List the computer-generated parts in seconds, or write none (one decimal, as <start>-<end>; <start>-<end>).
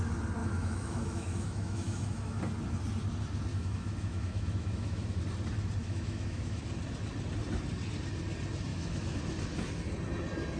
0.4-2.4; 3.5-5.2; 5.8-6.6; 8.7-9.2